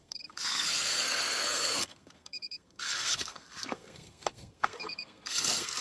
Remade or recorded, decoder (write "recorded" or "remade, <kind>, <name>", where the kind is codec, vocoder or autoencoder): remade, codec, SNAC